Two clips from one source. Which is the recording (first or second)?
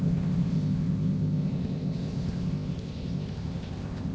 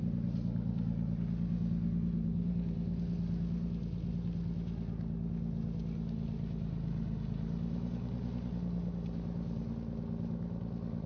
second